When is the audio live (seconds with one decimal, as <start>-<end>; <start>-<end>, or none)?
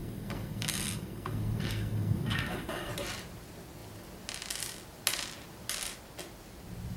2.9-7.0